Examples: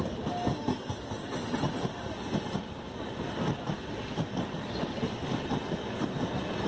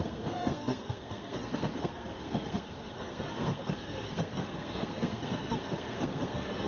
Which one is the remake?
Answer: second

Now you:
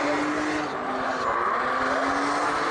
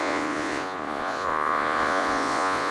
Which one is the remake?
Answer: second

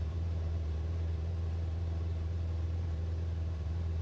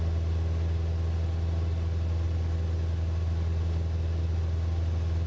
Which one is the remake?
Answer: first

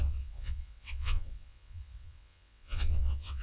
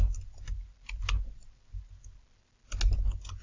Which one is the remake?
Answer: first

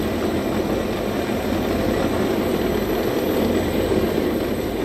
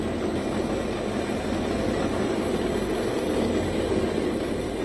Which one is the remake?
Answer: first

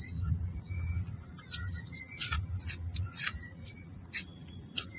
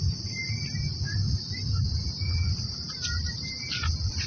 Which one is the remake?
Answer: first